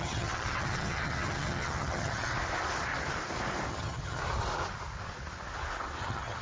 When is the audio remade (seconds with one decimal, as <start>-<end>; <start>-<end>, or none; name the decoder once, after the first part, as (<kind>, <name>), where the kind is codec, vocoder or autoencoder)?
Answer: 0.0-2.3 (vocoder, HiFi-GAN); 3.7-4.2; 6.0-6.4